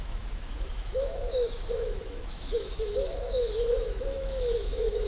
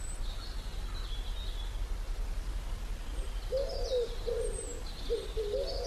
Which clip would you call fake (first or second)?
first